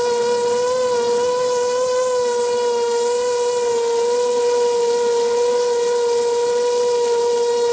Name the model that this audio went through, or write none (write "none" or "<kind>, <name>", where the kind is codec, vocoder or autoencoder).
none